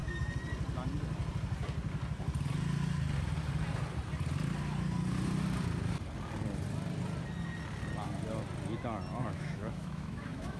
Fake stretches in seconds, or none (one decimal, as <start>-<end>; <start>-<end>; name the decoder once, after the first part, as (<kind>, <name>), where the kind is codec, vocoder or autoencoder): 9.2-10.6 (autoencoder, DAC-VAE)